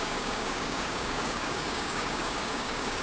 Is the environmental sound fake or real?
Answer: fake